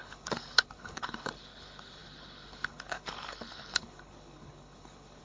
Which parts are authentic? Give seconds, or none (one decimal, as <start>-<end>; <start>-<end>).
none